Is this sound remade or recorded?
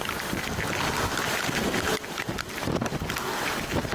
recorded